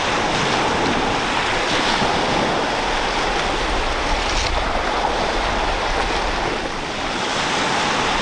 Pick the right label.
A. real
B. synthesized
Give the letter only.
A